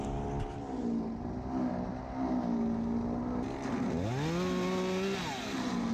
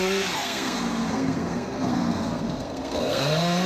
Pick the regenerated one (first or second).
second